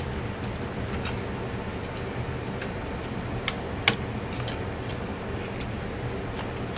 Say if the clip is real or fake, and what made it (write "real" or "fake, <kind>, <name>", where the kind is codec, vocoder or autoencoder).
real